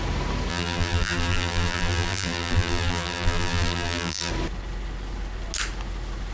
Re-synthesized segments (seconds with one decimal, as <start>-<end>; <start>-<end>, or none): 0.5-4.3